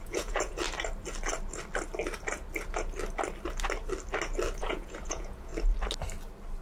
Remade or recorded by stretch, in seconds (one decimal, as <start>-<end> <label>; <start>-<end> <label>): 0.0-0.6 remade; 0.6-4.6 recorded; 4.6-5.5 remade; 5.5-6.6 recorded